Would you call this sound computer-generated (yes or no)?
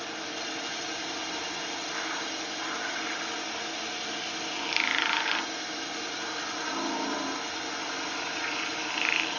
no